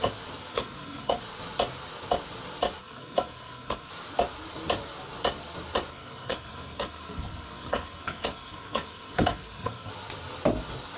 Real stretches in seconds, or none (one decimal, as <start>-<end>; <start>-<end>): 0.0-0.5; 1.2-2.8; 3.9-5.9; 9.9-11.0